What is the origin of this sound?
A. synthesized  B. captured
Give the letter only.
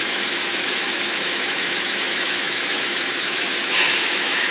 A